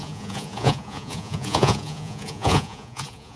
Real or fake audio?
fake